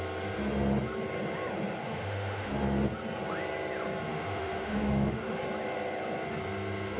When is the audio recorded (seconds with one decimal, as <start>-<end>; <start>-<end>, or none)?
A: 0.0-1.8; 2.5-4.1; 5.4-7.0